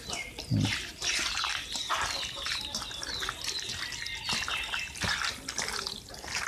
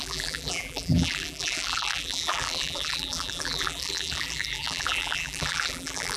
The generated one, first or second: second